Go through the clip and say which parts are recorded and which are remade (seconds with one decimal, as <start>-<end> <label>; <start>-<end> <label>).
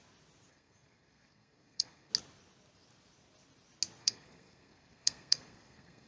0.0-0.5 recorded; 0.5-2.1 remade; 2.1-4.0 recorded; 4.0-6.1 remade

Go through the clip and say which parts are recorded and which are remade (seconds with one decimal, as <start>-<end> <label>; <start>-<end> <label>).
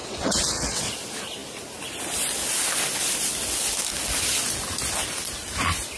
0.0-0.9 remade; 0.9-6.0 recorded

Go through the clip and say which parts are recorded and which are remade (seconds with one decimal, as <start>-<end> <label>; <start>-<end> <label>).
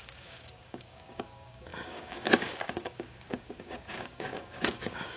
0.0-5.2 remade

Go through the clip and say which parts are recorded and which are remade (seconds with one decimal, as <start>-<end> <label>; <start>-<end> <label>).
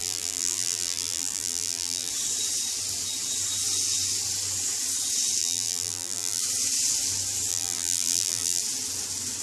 0.0-2.1 remade; 2.1-5.4 recorded; 5.4-6.4 remade; 6.4-7.5 recorded; 7.5-8.6 remade; 8.6-9.4 recorded